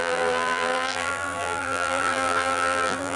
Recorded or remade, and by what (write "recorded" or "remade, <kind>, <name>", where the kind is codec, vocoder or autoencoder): remade, vocoder, BigVGAN v2